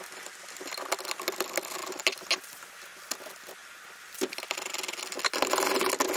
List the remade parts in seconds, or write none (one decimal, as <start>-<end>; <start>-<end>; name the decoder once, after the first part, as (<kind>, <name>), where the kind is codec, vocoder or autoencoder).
none